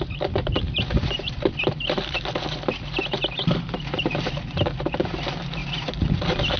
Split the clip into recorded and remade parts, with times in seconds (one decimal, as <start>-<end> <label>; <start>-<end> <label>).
0.0-5.6 remade; 5.6-6.6 recorded